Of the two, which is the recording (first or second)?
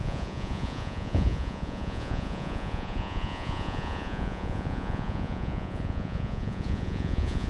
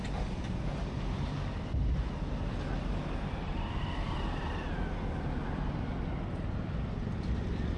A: second